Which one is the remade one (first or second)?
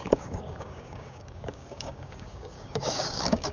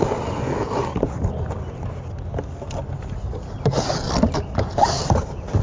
first